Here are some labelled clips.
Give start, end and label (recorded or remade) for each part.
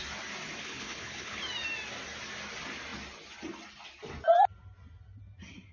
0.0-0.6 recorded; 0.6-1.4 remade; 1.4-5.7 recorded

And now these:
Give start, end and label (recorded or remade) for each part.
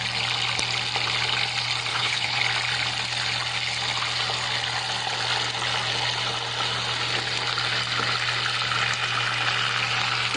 0.0-1.9 recorded; 1.9-2.4 remade; 2.4-10.4 recorded